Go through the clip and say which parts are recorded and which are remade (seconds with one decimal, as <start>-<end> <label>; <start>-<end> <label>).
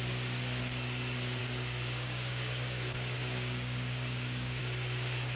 0.0-1.4 recorded; 1.4-4.6 remade; 4.6-5.4 recorded